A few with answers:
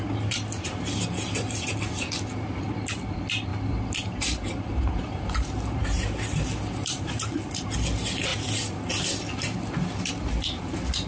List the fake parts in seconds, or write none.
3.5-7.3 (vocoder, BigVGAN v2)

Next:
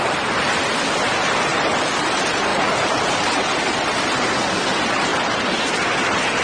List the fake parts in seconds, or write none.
0.0-1.5 (vocoder, BigVGAN v2); 2.1-2.5; 3.7-6.4

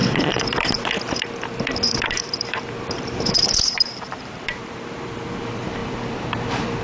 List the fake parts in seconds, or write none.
0.0-6.8 (vocoder, BigVGAN v2)

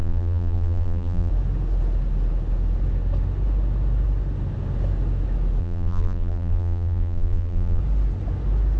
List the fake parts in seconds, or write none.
0.0-1.3 (vocoder, BigVGAN v2); 5.6-7.8